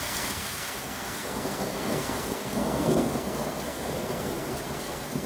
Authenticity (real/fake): fake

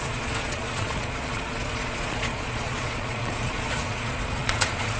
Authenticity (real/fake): fake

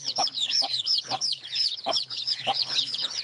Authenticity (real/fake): fake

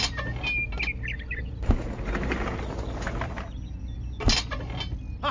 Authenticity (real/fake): real